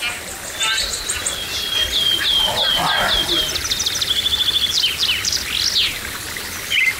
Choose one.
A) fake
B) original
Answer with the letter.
B